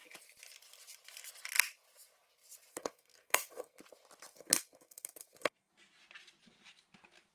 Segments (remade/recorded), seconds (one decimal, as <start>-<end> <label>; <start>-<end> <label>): 0.0-2.7 recorded; 2.7-3.8 remade; 3.8-4.3 recorded; 4.3-5.7 remade; 5.7-7.3 recorded